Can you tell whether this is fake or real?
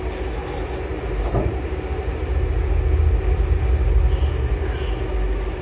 real